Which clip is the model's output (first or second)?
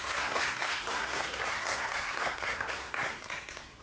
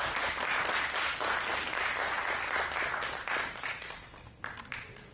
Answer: first